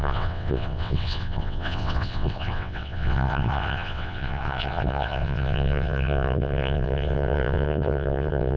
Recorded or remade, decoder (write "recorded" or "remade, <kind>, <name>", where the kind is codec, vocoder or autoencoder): remade, vocoder, WaveNeXt